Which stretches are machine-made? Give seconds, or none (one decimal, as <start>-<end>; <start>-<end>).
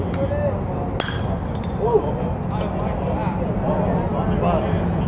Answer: none